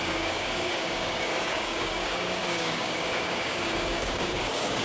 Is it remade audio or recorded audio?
remade